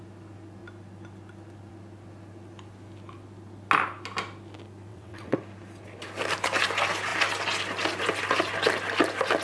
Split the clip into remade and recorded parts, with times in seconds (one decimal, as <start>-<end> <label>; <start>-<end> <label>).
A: 0.0-4.9 recorded; 4.9-5.4 remade; 5.4-9.4 recorded